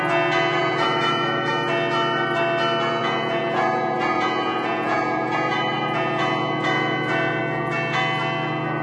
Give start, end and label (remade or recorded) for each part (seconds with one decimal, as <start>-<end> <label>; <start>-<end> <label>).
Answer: 0.0-0.6 recorded; 0.6-1.5 remade; 1.5-3.0 recorded; 3.0-7.4 remade; 7.4-8.8 recorded